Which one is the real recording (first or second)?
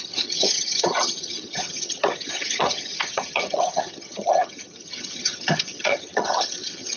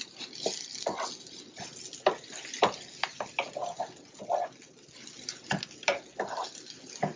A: second